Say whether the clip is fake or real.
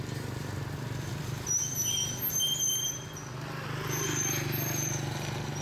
real